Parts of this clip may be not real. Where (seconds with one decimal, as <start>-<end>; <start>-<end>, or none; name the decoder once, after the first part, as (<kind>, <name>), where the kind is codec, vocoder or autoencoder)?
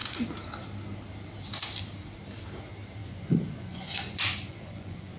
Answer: 3.0-5.2 (vocoder, Vocos)